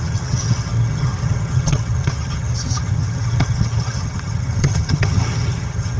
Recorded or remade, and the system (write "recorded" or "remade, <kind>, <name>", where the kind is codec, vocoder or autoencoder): remade, vocoder, HiFi-GAN